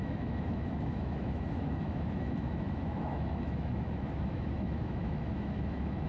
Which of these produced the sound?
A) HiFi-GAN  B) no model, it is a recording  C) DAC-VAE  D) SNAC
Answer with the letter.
C